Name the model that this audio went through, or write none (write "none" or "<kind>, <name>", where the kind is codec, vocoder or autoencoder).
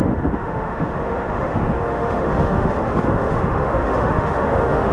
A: autoencoder, DAC-VAE